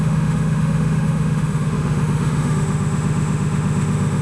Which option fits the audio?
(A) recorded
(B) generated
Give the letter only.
B